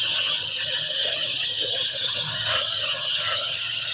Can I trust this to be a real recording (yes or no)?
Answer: no